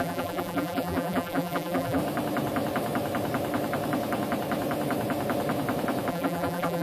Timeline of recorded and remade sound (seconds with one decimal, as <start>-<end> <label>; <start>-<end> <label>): 0.0-2.0 remade; 2.0-6.1 recorded; 6.1-6.8 remade